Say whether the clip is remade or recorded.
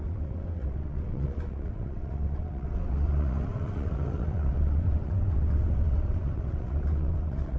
remade